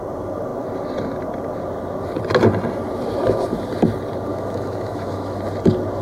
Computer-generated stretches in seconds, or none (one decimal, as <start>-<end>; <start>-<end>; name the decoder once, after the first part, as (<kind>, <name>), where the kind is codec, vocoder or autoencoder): 4.3-5.4 (autoencoder, DAC-VAE)